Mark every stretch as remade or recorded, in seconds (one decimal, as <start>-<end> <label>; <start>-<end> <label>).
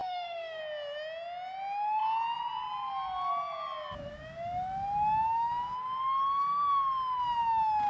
0.0-0.6 remade; 0.6-7.9 recorded